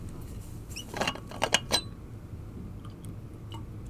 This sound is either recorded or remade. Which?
recorded